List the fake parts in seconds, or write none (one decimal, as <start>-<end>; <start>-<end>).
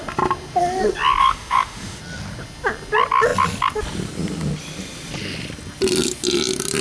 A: 1.2-2.0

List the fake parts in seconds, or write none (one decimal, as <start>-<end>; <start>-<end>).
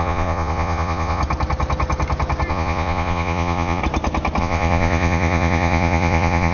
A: 0.0-1.2; 2.5-3.8; 4.4-6.5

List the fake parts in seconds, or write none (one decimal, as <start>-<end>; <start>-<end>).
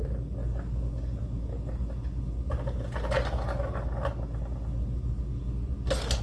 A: none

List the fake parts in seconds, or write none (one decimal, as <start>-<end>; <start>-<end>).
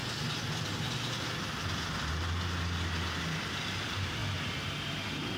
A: none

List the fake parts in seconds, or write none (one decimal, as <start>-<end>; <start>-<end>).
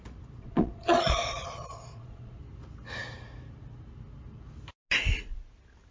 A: 0.4-2.4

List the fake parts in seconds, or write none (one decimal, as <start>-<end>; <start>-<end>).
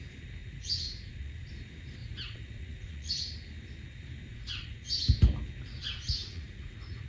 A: 0.4-1.5; 2.0-3.1; 4.3-4.9; 5.8-7.1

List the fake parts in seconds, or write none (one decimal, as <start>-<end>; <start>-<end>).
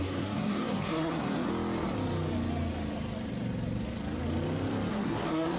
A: 0.0-1.5; 4.9-5.6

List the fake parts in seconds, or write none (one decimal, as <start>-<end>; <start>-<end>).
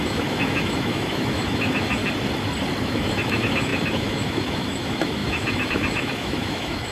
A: 0.0-2.0; 2.8-6.9